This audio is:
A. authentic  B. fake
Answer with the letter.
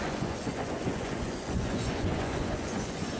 B